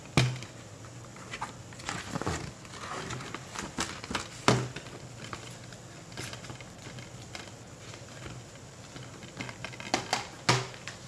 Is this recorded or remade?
recorded